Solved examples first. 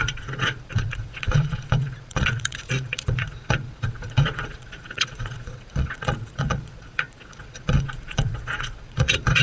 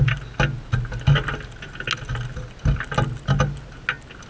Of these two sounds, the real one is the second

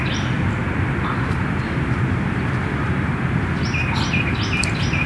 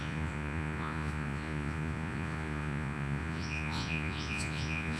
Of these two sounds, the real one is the first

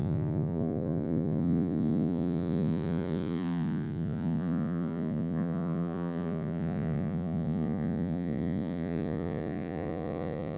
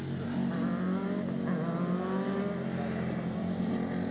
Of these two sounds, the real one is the second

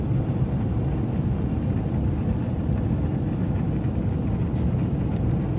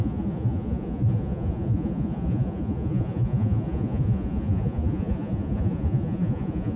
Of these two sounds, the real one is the first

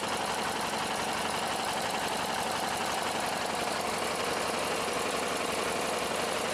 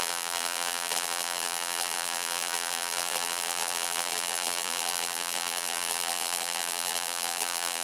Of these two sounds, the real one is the first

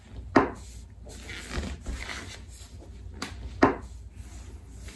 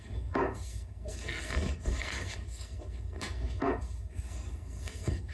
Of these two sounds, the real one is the first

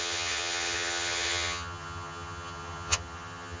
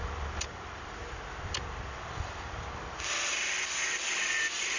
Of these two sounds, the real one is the second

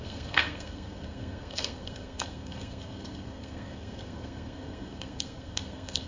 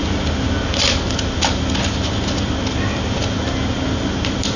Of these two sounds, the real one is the second